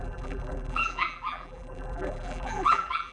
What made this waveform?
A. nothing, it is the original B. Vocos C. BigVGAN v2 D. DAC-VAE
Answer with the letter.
C